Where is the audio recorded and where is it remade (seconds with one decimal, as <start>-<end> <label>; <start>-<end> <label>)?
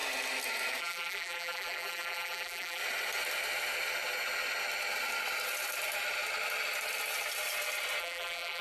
0.0-0.8 recorded; 0.8-2.8 remade; 2.8-8.0 recorded; 8.0-8.6 remade